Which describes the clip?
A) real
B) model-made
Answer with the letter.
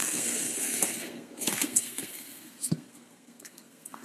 B